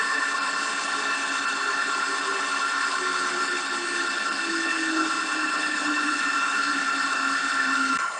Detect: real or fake fake